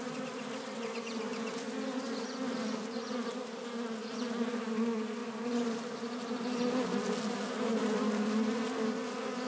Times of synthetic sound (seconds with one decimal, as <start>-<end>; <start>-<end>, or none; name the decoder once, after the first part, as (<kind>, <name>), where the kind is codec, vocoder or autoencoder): none